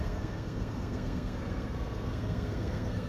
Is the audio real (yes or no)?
no